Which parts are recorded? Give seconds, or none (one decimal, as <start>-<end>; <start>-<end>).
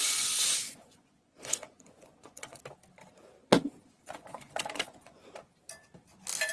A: 2.6-3.4; 5.3-6.5